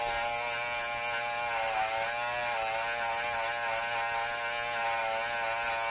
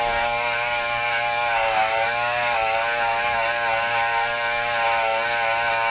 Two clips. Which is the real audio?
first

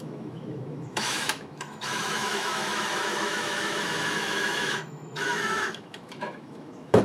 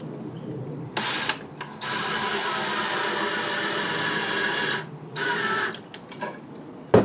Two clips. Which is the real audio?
second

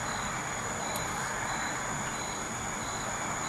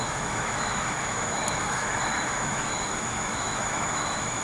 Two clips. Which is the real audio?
first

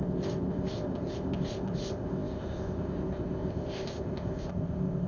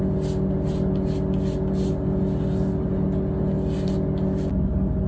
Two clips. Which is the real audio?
second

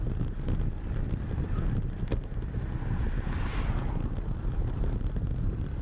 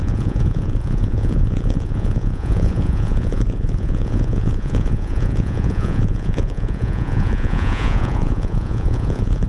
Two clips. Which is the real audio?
first